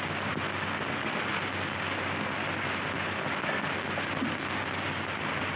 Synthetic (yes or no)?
no